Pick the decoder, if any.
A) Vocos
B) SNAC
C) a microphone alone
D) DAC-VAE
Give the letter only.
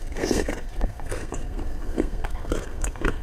B